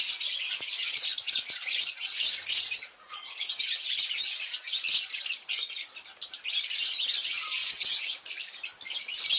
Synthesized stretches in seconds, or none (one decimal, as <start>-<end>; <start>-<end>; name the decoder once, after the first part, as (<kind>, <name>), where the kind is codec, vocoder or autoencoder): 0.4-4.8 (vocoder, Vocos); 7.6-8.3